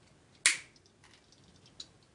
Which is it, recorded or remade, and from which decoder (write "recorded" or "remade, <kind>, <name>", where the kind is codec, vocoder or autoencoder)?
recorded